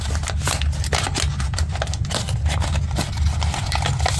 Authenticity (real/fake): real